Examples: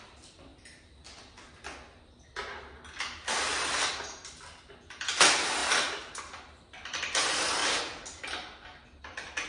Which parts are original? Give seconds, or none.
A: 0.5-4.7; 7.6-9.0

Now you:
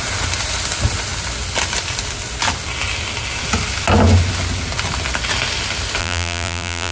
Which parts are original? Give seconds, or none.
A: 0.0-6.0

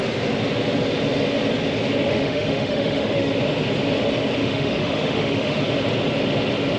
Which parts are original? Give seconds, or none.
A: 0.0-2.0; 3.3-4.4; 5.6-6.8

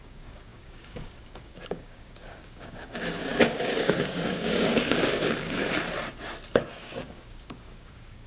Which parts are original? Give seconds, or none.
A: 5.6-6.7

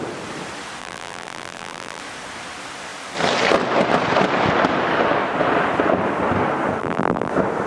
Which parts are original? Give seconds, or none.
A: 0.0-0.8; 2.0-6.8; 7.3-7.7

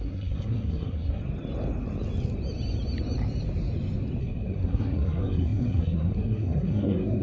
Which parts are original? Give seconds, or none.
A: 1.2-4.2

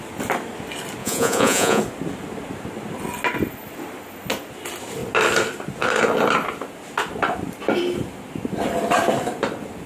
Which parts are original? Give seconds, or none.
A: 0.0-1.0; 1.8-9.9